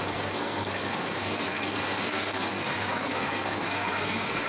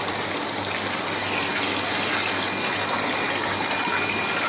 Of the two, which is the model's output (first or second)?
first